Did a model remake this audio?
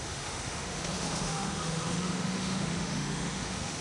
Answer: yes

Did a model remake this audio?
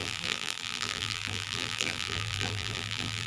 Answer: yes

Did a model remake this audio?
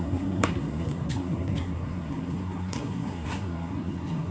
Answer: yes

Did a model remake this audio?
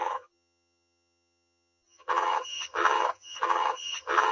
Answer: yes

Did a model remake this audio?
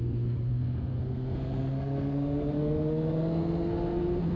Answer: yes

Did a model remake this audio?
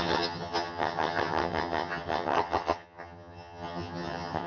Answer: yes